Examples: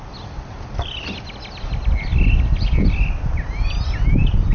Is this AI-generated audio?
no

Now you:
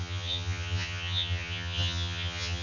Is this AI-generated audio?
yes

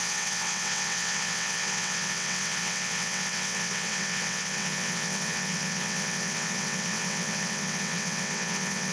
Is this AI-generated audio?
yes